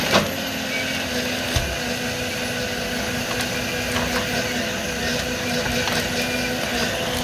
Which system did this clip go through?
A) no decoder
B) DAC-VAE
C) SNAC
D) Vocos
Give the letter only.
A